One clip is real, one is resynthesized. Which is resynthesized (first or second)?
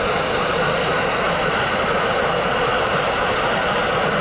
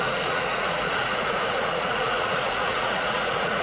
second